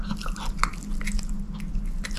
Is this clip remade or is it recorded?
recorded